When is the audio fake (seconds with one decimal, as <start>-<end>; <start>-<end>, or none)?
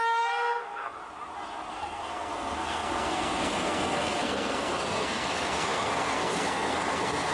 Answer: 0.0-1.0; 1.7-7.3